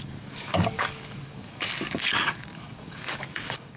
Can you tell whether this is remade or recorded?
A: remade